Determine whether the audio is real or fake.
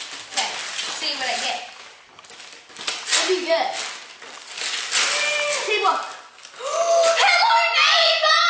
real